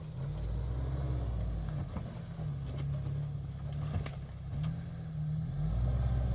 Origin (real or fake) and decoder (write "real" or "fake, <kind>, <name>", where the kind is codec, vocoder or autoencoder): real